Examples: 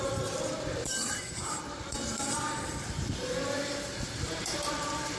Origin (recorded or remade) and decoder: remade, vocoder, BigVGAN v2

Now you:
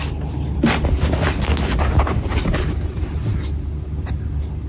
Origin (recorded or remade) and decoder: recorded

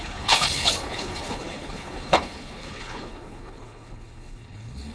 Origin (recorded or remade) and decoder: remade, codec, HILCodec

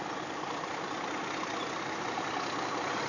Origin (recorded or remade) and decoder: recorded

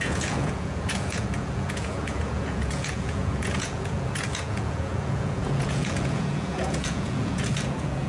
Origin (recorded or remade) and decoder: remade, vocoder, Vocos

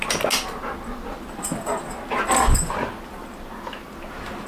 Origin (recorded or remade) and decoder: recorded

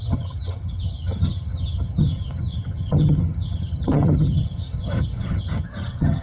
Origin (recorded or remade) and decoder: remade, vocoder, HiFi-GAN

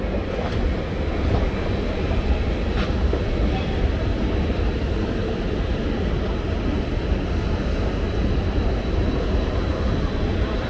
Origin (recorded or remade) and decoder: recorded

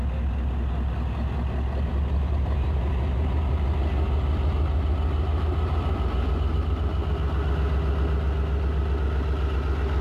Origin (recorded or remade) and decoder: recorded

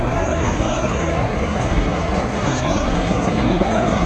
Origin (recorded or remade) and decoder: remade, codec, SNAC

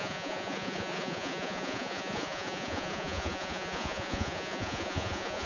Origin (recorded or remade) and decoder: remade, vocoder, Vocos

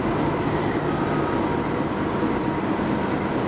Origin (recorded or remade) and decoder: recorded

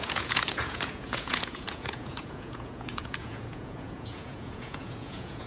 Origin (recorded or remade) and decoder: remade, vocoder, Vocos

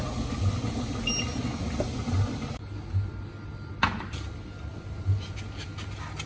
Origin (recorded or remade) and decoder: recorded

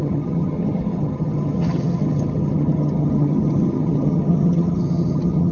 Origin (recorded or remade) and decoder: remade, vocoder, HiFi-GAN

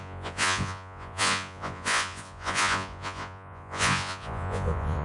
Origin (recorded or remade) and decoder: remade, vocoder, Vocos